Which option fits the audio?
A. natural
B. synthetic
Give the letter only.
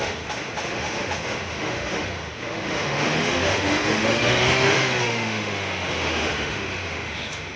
B